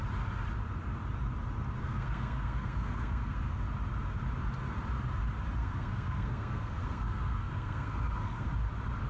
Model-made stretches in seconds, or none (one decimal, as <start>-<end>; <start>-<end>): 1.8-3.6; 5.6-8.5